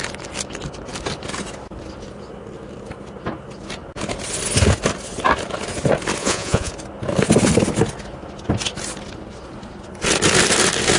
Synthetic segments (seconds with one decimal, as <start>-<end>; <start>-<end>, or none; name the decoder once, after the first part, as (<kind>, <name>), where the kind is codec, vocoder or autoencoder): 6.2-6.7 (vocoder, Vocos)